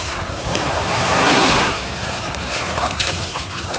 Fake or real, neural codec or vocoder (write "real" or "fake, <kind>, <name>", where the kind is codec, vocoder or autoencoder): fake, codec, SNAC